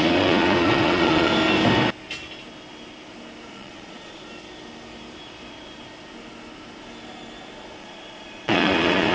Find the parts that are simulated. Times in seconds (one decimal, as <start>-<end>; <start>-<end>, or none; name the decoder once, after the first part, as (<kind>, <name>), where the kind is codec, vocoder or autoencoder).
0.0-1.3 (vocoder, Vocos); 3.5-4.2; 7.8-9.1